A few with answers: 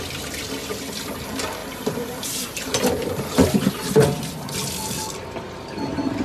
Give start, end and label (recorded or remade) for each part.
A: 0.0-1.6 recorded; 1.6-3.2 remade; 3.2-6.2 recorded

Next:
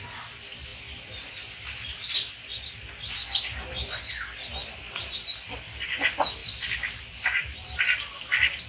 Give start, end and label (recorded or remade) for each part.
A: 0.0-0.7 recorded; 0.7-2.6 remade; 2.6-4.6 recorded; 4.6-5.6 remade; 5.6-6.4 recorded; 6.4-8.1 remade; 8.1-8.7 recorded

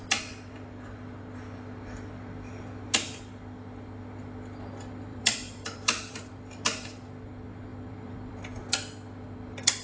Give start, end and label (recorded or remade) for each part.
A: 0.0-5.1 recorded; 5.1-6.5 remade; 6.5-7.7 recorded; 7.7-8.7 remade; 8.7-9.8 recorded

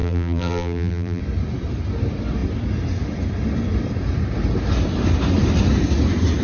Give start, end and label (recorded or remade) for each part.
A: 0.0-1.2 remade; 1.2-6.4 recorded

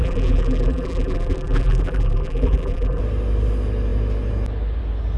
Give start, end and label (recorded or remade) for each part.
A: 0.0-3.0 remade; 3.0-5.2 recorded

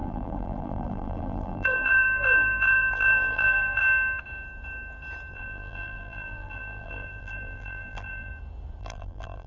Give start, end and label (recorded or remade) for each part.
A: 0.0-3.8 remade; 3.8-5.3 recorded; 5.3-8.3 remade; 8.3-8.8 recorded; 8.8-9.5 remade

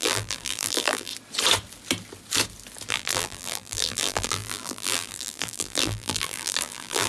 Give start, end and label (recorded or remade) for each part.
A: 0.0-1.1 remade; 1.1-2.9 recorded; 2.9-7.1 remade